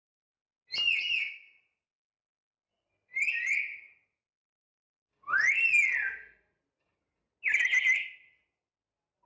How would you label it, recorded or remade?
recorded